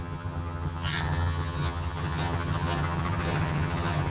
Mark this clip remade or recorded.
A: remade